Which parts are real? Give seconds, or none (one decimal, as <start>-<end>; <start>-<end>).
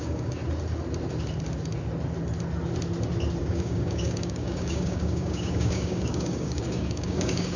0.4-3.4